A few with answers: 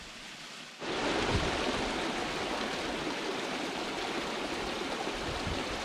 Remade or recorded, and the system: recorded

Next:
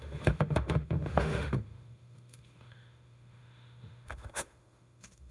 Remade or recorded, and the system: remade, autoencoder, DAC-VAE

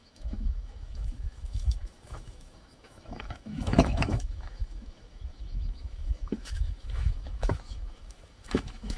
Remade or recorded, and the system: remade, autoencoder, DAC-VAE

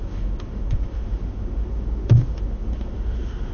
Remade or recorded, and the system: remade, autoencoder, DAC-VAE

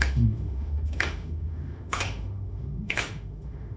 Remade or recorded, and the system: remade, autoencoder, DAC-VAE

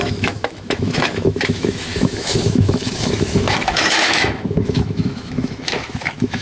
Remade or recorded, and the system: remade, autoencoder, DAC-VAE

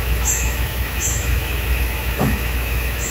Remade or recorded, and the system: remade, autoencoder, DAC-VAE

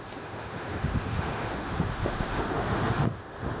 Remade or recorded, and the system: remade, autoencoder, DAC-VAE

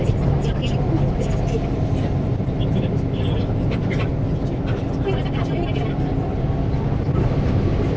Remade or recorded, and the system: recorded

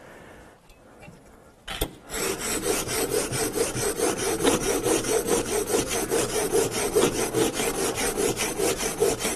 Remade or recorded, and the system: recorded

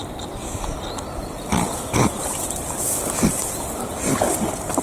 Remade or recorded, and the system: recorded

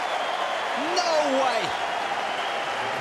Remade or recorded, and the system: recorded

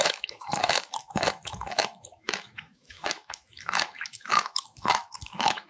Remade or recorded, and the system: remade, autoencoder, DAC-VAE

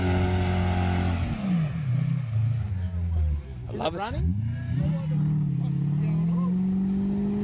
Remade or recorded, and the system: recorded